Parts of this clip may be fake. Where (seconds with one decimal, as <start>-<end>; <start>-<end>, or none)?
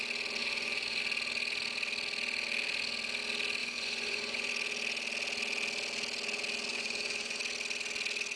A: 0.4-1.0; 3.6-4.5; 6.7-7.4